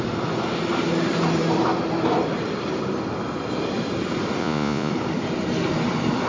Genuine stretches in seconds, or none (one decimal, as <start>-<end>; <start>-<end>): 0.0-4.4; 4.9-6.3